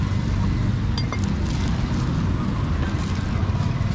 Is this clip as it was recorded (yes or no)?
yes